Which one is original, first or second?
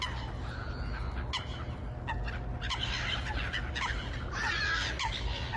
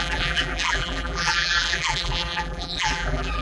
first